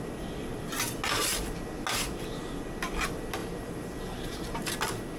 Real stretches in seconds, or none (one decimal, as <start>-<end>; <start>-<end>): 0.0-3.4; 4.7-5.2